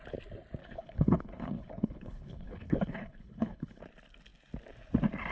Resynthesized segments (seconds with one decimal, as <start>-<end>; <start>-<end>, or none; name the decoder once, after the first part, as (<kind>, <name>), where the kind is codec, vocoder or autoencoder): 0.6-3.8 (codec, HILCodec)